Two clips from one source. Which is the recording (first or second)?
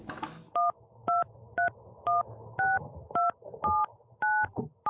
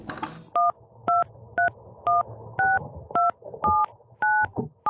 second